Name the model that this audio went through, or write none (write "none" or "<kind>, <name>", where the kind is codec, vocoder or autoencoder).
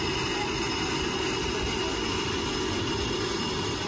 none